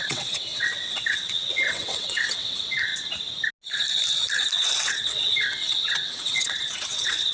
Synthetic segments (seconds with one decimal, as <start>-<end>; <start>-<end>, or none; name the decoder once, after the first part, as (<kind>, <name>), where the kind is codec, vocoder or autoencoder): 0.0-2.9 (vocoder, WaveNeXt); 4.9-7.3